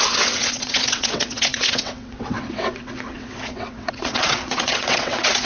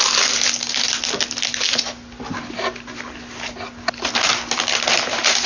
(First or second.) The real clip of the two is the second